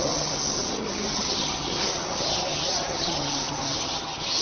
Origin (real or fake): fake